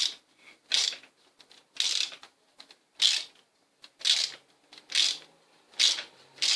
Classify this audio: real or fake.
real